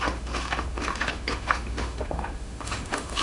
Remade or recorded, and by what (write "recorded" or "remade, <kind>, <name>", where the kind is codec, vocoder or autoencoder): remade, autoencoder, DAC-VAE